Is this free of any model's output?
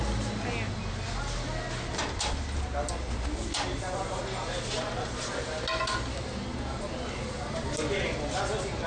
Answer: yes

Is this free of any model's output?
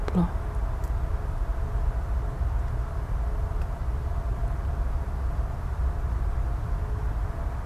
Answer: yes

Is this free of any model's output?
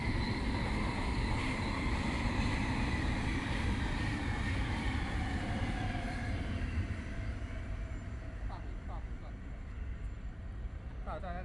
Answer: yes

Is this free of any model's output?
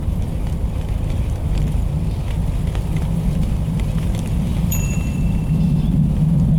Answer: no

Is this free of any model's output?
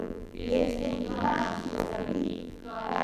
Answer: no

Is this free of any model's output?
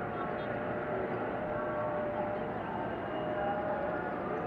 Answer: yes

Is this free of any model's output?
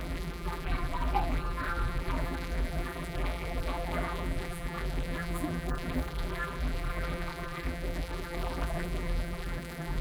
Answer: no